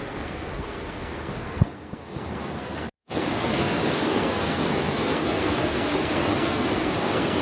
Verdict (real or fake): fake